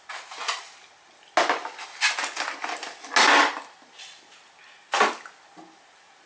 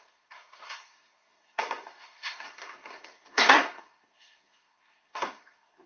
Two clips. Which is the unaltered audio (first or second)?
first